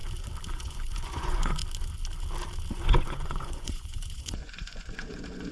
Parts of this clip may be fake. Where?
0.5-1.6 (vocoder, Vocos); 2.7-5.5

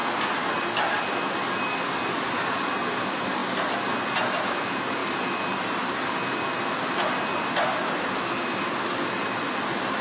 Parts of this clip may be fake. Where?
none

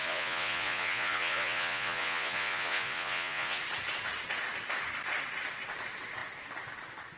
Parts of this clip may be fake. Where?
0.0-3.6 (vocoder, Vocos)

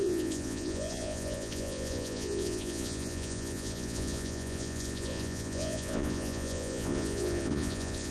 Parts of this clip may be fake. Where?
0.0-8.1 (vocoder, Vocos)